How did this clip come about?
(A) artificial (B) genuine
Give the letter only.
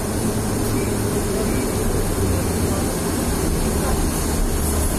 B